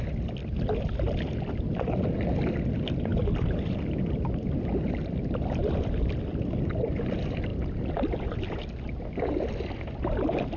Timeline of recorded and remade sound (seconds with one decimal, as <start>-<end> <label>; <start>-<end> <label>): 0.0-0.4 remade; 0.4-1.9 recorded; 1.9-7.5 remade; 7.5-10.0 recorded; 10.0-10.6 remade